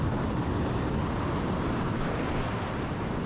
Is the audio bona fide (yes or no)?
yes